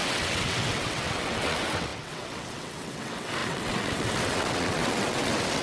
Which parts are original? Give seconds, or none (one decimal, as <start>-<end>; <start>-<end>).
none